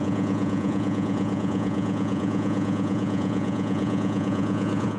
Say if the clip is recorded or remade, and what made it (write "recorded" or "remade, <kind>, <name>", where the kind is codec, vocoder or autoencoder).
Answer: remade, vocoder, Vocos